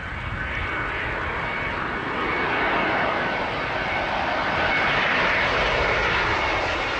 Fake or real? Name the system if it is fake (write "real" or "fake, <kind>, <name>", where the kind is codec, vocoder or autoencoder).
real